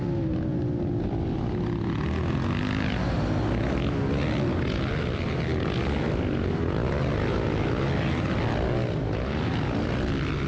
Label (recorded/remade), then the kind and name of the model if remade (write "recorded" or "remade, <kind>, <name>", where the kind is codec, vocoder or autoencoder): recorded